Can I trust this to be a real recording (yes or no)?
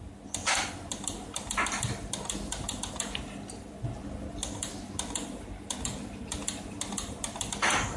yes